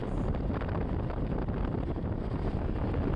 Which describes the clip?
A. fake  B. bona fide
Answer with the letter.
B